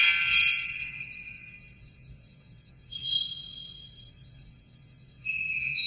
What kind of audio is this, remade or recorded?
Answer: remade